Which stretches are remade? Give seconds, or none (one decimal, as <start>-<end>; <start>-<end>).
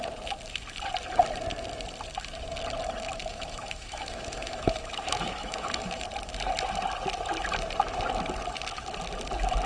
3.2-6.0